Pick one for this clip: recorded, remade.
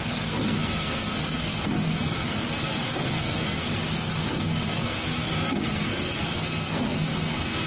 remade